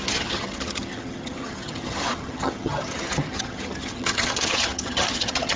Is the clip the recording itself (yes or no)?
no